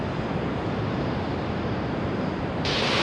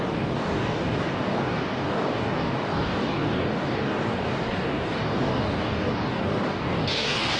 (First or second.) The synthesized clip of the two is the second